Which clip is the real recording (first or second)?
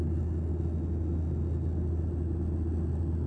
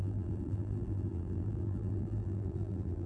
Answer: first